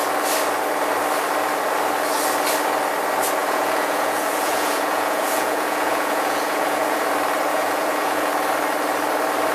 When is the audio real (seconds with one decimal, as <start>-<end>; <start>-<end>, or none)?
0.0-3.4; 7.1-7.5; 8.3-9.5